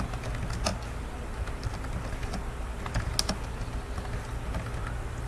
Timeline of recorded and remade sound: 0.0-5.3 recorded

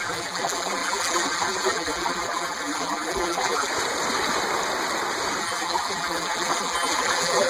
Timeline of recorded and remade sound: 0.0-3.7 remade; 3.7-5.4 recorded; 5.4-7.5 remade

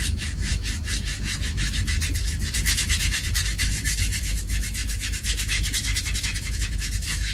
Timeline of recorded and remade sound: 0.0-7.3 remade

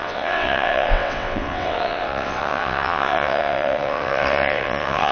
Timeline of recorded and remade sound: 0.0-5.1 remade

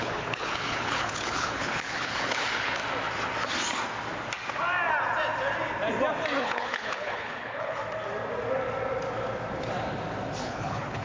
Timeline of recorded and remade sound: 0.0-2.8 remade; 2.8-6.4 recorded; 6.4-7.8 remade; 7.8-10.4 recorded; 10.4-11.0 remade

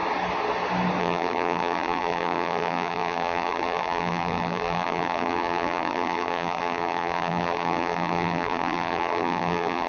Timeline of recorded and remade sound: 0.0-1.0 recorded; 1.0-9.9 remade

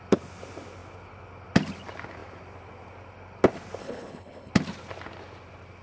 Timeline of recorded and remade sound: 0.0-3.8 recorded; 3.8-4.5 remade; 4.5-5.8 recorded

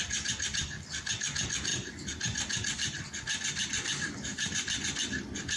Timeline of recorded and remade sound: 0.0-5.6 recorded